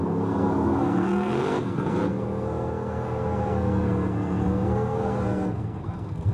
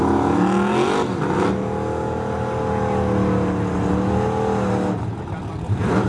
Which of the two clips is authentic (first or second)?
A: second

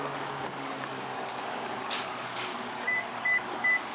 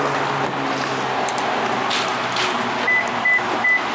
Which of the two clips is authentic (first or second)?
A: second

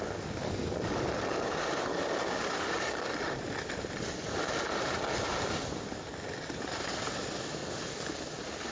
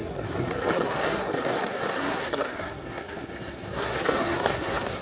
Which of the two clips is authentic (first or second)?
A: first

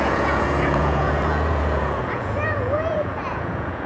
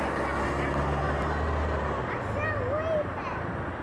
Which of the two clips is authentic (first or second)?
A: second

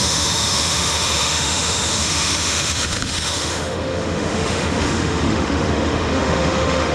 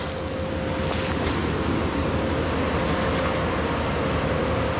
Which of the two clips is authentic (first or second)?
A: second